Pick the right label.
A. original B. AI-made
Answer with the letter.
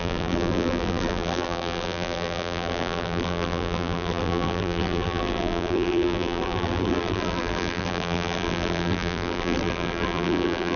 B